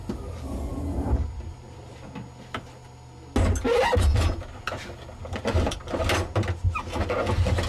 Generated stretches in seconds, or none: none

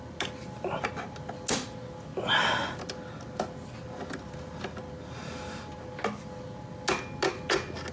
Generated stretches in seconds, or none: none

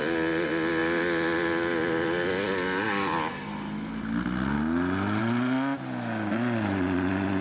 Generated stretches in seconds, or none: none

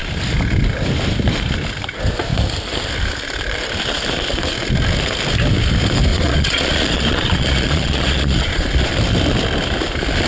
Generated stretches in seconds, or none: 6.1-8.9 (vocoder, Vocos)

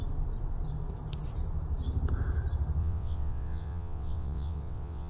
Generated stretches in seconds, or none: 2.8-5.1 (vocoder, WaveNeXt)

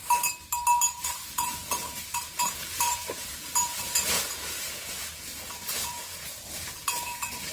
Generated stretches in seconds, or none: 0.9-7.5 (vocoder, Vocos)

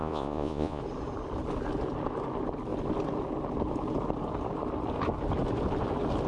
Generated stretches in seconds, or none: 0.0-0.8 (vocoder, Vocos)

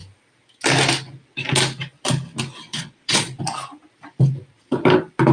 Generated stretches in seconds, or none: 2.7-3.4 (vocoder, Vocos)